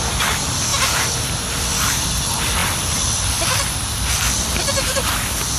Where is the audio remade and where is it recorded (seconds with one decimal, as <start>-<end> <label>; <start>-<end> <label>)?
0.0-0.7 recorded; 0.7-1.4 remade; 1.4-5.6 recorded